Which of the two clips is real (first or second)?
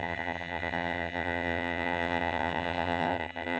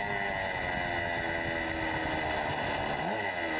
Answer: second